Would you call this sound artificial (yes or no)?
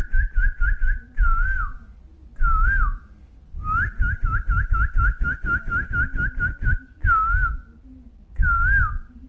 no